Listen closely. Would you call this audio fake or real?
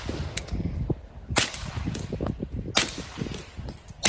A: real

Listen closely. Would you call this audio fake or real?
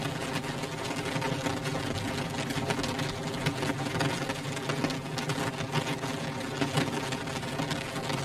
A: real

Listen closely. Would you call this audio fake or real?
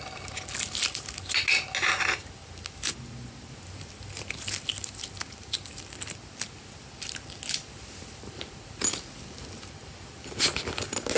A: real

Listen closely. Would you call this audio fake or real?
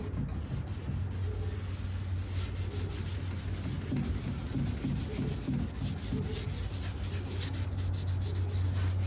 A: real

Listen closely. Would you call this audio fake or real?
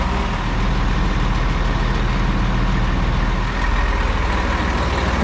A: real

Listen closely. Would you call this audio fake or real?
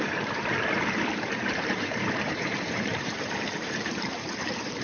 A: fake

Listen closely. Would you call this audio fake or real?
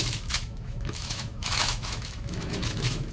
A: fake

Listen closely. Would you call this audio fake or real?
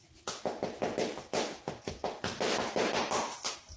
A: real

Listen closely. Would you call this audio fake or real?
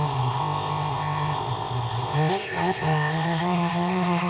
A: fake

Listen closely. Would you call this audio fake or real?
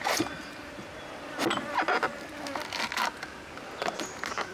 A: real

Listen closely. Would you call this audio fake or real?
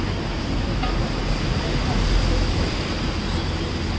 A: real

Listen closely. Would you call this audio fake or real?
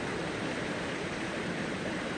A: fake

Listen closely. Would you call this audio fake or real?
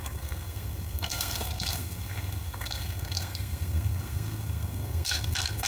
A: fake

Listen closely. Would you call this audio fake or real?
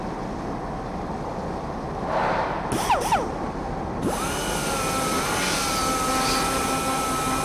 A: real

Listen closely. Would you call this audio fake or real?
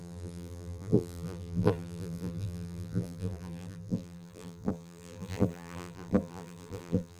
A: fake